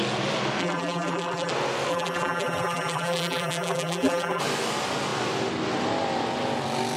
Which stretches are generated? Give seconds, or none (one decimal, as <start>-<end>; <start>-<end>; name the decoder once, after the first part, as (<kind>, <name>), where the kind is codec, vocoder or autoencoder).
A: 0.6-1.5 (vocoder, BigVGAN v2); 1.9-4.4